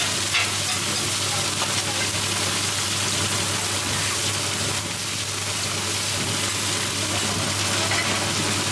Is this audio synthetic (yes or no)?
no